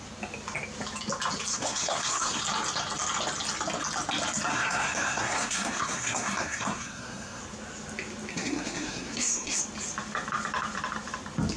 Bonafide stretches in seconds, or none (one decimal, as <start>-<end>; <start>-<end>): 0.0-1.5; 2.4-4.5; 7.4-8.3; 9.6-11.6